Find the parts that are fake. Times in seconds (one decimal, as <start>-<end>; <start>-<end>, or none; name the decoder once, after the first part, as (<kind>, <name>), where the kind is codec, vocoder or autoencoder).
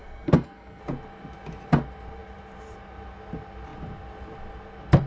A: 0.0-0.8 (codec, SNAC)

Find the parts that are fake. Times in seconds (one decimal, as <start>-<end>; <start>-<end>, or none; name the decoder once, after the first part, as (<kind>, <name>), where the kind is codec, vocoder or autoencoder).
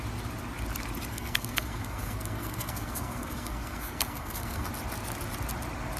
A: 1.1-4.7 (codec, SNAC)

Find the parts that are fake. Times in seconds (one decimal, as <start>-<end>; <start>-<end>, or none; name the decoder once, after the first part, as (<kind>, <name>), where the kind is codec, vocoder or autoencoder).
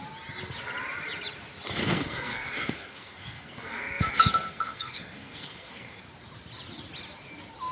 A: 1.8-6.0 (codec, SNAC)